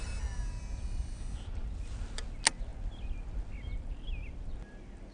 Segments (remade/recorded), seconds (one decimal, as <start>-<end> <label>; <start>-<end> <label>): 0.0-5.1 recorded